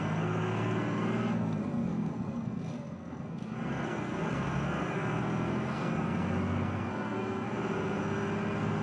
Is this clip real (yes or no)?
no